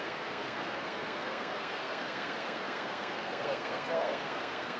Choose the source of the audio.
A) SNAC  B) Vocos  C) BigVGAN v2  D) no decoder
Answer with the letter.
A